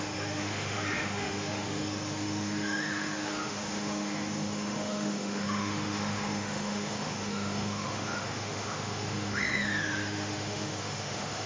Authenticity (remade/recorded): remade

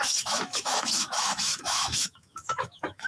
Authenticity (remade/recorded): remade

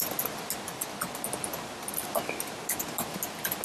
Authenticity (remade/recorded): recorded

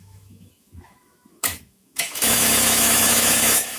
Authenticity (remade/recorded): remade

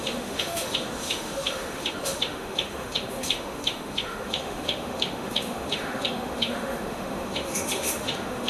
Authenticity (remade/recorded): remade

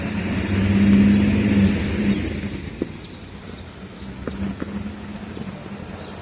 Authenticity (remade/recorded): recorded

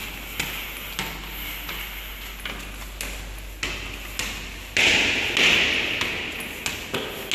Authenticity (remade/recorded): recorded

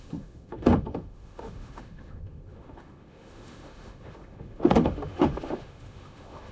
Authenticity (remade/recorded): remade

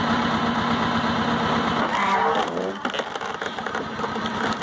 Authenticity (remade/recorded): recorded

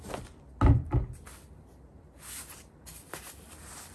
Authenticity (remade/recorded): recorded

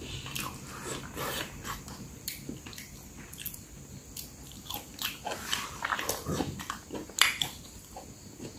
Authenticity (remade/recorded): recorded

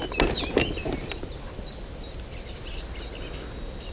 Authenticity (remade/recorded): recorded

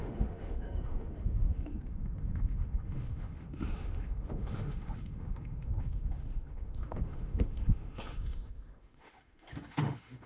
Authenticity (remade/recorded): remade